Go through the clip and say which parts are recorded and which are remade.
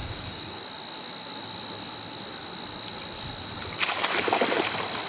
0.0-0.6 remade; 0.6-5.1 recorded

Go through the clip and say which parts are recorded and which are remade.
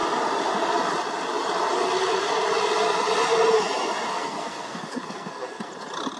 0.0-4.1 recorded; 4.1-5.7 remade; 5.7-6.2 recorded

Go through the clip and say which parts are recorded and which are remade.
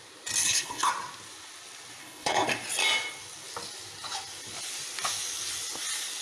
0.0-0.4 recorded; 0.4-0.9 remade; 0.9-2.0 recorded; 2.0-2.5 remade; 2.5-6.2 recorded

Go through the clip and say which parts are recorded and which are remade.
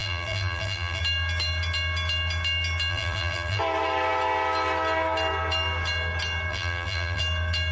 0.0-1.0 remade; 1.0-2.9 recorded; 2.9-3.6 remade; 3.6-6.5 recorded; 6.5-7.2 remade; 7.2-7.7 recorded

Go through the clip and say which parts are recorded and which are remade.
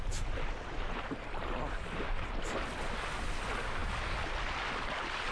0.0-5.3 recorded